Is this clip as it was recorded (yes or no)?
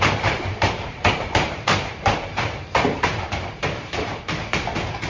no